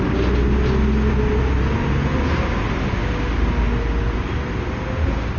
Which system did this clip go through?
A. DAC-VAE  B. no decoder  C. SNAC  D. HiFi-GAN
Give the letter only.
B